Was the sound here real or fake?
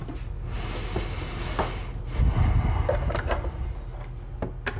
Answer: real